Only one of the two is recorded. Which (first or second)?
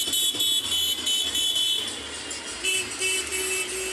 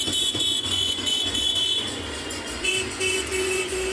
first